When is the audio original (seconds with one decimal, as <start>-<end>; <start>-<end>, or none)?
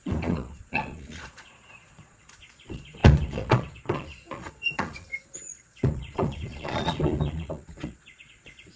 none